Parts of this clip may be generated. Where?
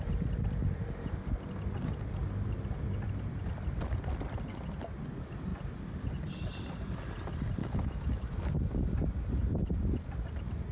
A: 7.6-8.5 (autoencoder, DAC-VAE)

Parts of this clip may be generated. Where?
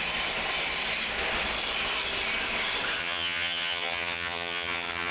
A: 3.0-5.1 (vocoder, HiFi-GAN)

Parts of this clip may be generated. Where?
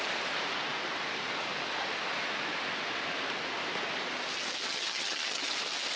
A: 4.7-5.5 (vocoder, HiFi-GAN)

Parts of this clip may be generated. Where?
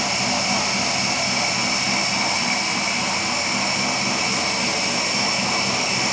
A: none